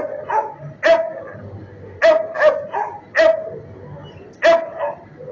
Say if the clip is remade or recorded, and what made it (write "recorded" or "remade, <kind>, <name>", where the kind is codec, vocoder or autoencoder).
recorded